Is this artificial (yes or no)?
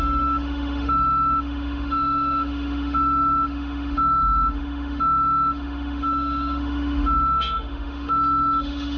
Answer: yes